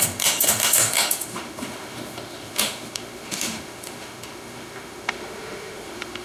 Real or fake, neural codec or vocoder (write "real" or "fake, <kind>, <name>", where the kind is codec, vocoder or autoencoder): fake, autoencoder, DAC-VAE